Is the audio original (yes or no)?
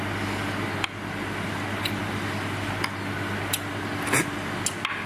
yes